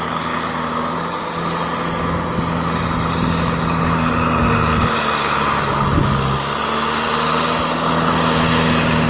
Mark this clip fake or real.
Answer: real